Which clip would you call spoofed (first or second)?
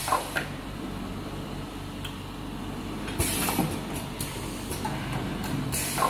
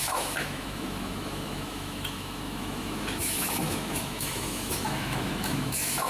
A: second